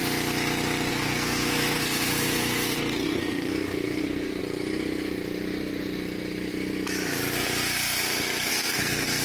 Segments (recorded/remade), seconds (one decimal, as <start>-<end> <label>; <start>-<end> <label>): 0.0-0.9 recorded; 0.9-4.4 remade; 4.4-8.5 recorded; 8.5-9.2 remade